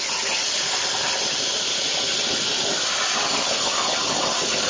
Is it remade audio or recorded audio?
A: recorded